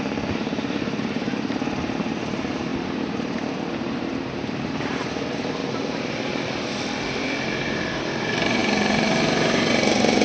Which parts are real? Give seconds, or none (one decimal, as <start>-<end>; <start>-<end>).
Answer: 5.6-7.2